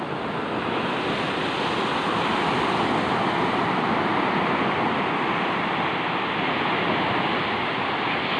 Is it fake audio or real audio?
real